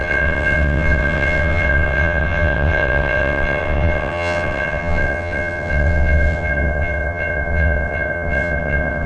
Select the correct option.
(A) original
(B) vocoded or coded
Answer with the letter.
B